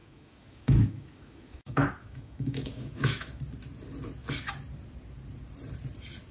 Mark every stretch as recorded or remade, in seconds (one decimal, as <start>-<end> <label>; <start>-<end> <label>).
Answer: 0.0-3.4 remade; 3.4-6.3 recorded